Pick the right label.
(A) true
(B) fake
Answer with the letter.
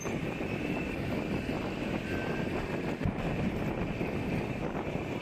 A